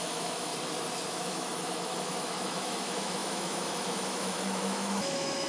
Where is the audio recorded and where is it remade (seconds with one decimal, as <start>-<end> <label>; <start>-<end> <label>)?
0.0-0.5 remade; 0.5-1.1 recorded; 1.1-5.5 remade